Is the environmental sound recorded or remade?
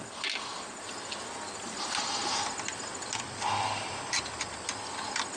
recorded